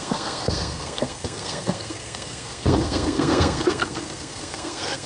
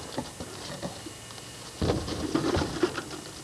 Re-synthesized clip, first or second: first